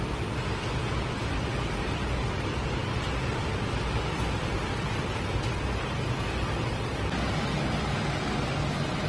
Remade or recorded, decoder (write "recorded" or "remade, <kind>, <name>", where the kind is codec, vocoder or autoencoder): recorded